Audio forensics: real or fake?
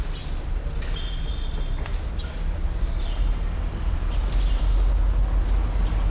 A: real